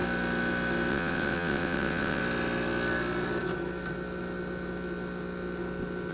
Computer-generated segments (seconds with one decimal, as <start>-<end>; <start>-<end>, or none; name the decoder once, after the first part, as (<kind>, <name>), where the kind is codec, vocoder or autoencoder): 0.9-2.2 (vocoder, WaveNeXt)